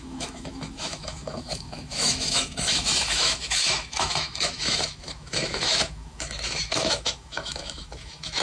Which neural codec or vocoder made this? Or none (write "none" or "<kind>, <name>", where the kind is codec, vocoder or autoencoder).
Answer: autoencoder, DAC-VAE